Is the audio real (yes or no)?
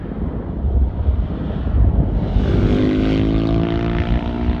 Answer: yes